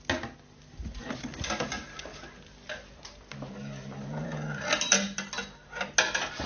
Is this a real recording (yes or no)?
yes